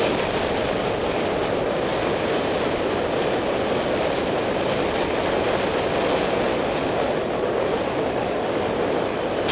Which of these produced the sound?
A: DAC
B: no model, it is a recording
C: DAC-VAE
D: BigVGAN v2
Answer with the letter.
B